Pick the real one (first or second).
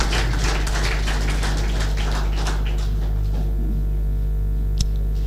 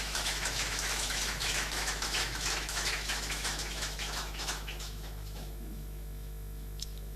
first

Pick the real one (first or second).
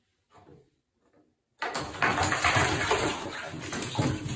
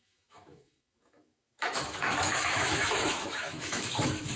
first